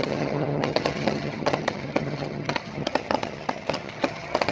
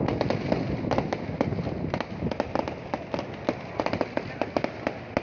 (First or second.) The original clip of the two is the second